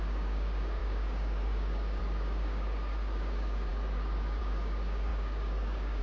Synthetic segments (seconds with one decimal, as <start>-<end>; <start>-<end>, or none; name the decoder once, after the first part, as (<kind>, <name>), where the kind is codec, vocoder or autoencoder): 0.0-6.0 (codec, DAC)